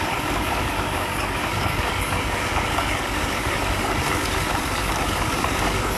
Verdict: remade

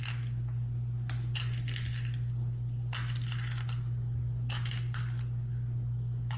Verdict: recorded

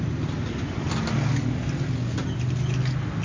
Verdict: recorded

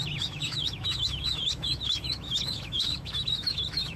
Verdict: remade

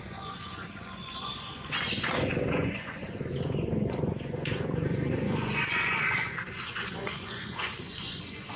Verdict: remade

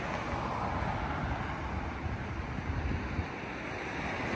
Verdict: recorded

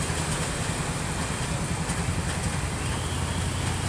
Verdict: recorded